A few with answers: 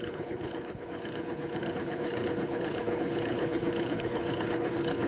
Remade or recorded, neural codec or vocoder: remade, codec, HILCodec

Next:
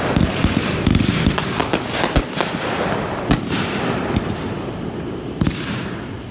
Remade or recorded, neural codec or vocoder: recorded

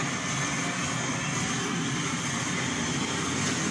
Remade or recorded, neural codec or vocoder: recorded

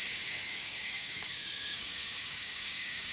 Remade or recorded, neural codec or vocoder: remade, codec, DAC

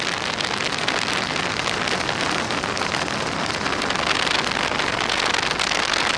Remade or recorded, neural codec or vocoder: recorded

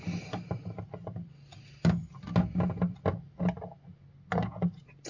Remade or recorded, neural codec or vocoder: recorded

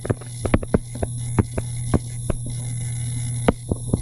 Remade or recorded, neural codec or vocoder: recorded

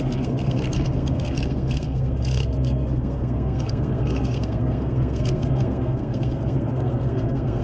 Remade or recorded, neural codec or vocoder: remade, codec, SNAC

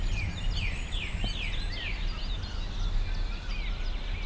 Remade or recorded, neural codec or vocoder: recorded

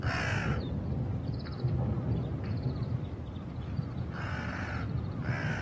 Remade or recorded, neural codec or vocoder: recorded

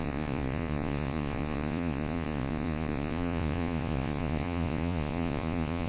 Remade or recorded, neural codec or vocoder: remade, vocoder, Vocos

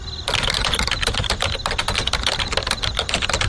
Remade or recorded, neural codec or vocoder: recorded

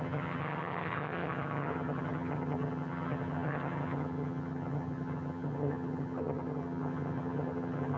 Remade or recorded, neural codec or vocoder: remade, vocoder, HiFi-GAN